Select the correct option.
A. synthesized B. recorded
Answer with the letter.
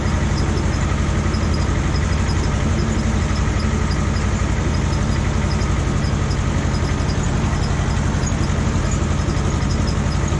B